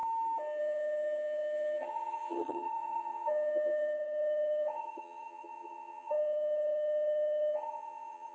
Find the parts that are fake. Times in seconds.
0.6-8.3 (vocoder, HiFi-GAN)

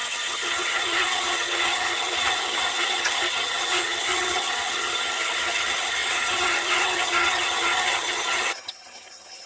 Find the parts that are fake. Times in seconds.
0.0-9.5 (vocoder, HiFi-GAN)

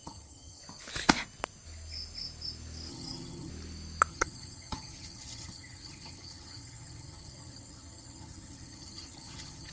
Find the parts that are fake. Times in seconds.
0.0-0.6 (vocoder, HiFi-GAN); 2.9-3.5; 4.1-9.7

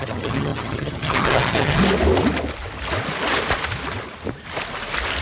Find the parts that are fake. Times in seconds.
0.0-1.8 (vocoder, HiFi-GAN)

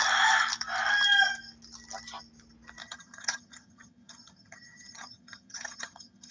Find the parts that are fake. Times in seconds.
2.8-6.3 (vocoder, HiFi-GAN)

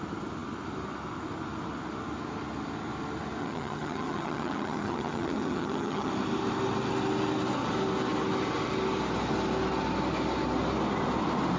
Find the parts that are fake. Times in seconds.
3.4-6.1 (vocoder, HiFi-GAN)